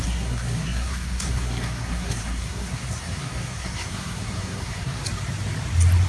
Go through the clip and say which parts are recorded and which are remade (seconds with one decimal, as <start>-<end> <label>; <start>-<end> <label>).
0.0-5.0 remade; 5.0-6.1 recorded